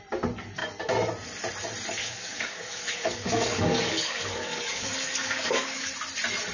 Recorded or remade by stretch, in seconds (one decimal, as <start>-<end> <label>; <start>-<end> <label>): 0.0-2.0 recorded; 2.0-5.9 remade; 5.9-6.5 recorded

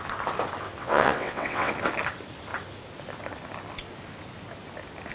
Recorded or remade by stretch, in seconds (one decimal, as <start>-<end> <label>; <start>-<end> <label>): 0.0-0.8 recorded; 0.8-1.7 remade; 1.7-5.1 recorded